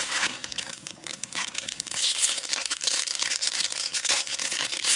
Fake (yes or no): yes